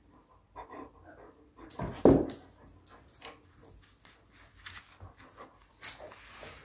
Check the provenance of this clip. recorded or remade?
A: recorded